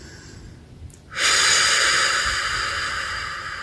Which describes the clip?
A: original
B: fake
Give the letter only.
A